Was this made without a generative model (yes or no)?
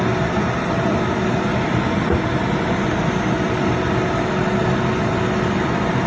yes